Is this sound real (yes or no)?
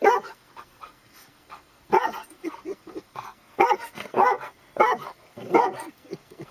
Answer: no